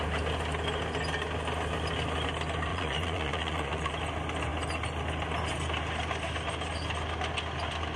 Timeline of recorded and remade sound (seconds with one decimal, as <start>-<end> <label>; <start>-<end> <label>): 0.0-2.7 recorded; 2.7-3.9 remade; 3.9-8.0 recorded